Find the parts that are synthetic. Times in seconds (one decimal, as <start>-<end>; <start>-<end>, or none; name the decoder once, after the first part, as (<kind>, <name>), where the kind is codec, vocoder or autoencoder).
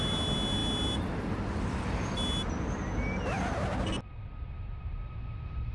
none